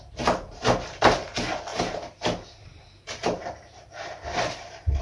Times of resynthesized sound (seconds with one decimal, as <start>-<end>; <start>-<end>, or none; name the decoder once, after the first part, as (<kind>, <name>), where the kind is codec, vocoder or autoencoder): 1.7-5.0 (vocoder, BigVGAN v2)